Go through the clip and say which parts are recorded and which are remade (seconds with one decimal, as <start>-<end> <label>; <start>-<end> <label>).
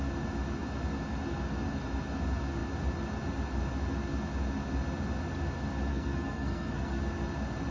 0.0-5.9 recorded; 5.9-7.0 remade; 7.0-7.7 recorded